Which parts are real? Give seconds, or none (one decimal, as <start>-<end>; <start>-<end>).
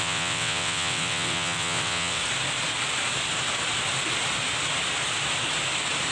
2.2-6.1